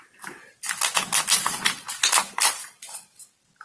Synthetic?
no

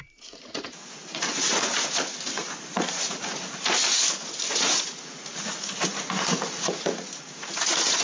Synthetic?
yes